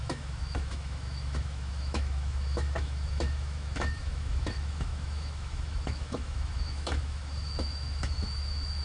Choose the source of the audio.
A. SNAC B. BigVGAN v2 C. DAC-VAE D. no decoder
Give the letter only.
C